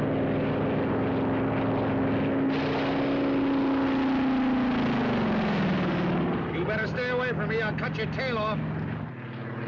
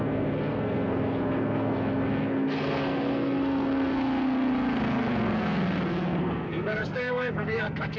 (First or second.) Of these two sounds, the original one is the first